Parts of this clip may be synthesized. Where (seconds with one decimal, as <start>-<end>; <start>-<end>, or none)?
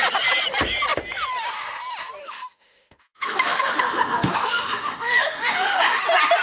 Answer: 2.2-6.0